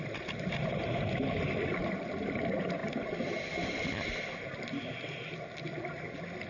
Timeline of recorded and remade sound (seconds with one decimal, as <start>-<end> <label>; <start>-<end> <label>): 0.0-6.5 recorded